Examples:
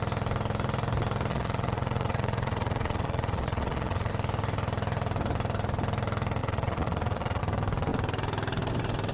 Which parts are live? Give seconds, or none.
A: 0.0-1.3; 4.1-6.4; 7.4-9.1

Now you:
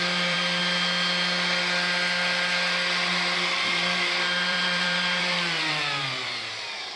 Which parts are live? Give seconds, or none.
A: 0.6-3.7

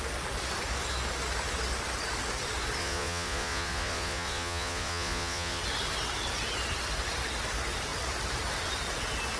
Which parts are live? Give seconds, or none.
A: 0.0-2.8; 5.6-9.4

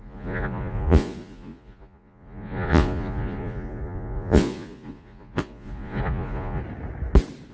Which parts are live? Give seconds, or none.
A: 6.6-7.5

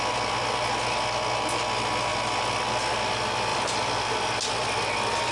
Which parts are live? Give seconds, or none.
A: 0.0-3.5; 4.1-5.3

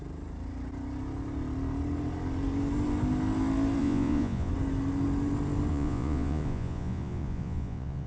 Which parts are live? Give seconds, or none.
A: 0.0-3.8; 4.5-5.7